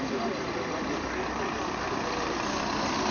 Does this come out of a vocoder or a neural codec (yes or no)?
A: no